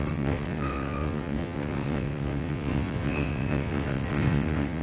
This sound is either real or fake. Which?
fake